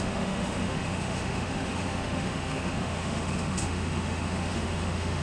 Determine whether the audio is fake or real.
fake